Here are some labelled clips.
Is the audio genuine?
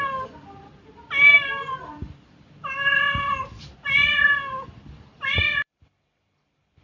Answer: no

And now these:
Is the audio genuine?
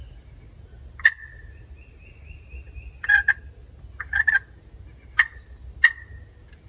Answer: yes